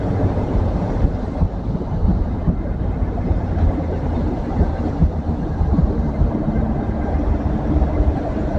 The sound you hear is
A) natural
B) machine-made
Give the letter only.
B